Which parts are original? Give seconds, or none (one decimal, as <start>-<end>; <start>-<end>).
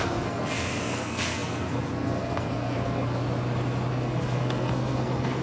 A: 3.2-3.9